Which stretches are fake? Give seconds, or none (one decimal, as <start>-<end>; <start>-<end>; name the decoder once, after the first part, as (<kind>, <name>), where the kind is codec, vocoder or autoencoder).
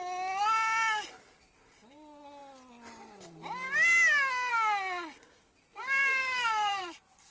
6.5-7.3 (vocoder, BigVGAN v2)